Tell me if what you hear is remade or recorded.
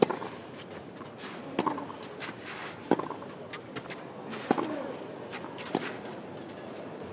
recorded